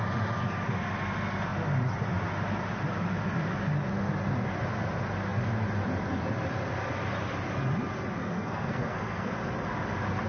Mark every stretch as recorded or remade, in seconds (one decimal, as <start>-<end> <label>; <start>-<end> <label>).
0.0-8.2 recorded; 8.2-9.3 remade; 9.3-10.3 recorded